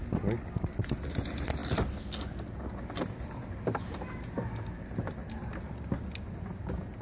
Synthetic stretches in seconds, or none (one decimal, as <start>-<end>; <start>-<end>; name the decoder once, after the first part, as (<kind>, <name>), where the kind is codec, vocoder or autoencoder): none